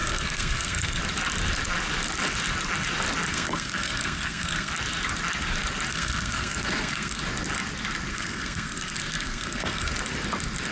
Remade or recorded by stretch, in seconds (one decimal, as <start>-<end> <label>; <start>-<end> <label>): 0.0-1.0 remade; 1.0-3.3 recorded; 3.3-4.7 remade; 4.7-5.9 recorded; 5.9-7.2 remade; 7.2-8.1 recorded; 8.1-9.9 remade; 9.9-10.7 recorded